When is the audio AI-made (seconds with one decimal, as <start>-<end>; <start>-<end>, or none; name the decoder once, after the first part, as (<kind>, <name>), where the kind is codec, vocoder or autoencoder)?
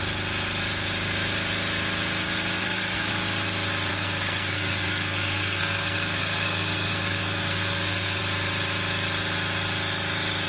2.6-3.1 (codec, SNAC); 3.9-8.2